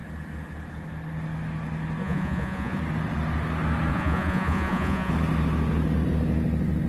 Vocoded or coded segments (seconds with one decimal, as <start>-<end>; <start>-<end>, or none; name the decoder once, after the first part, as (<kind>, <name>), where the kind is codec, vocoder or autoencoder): 2.0-2.8 (vocoder, Vocos); 3.9-5.1